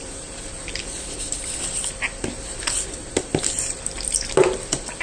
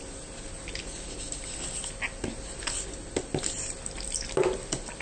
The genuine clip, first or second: second